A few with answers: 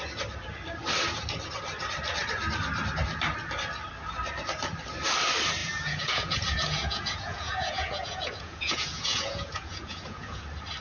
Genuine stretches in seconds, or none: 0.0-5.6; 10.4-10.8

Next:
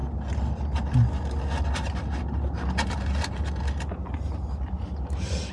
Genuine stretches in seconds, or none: 0.0-5.5

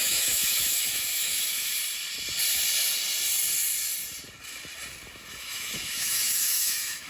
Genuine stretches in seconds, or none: 1.7-5.3